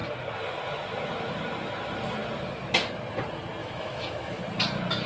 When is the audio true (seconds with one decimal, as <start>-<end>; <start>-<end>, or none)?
0.0-3.6; 4.4-5.1